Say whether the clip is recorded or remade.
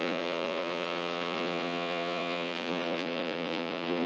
remade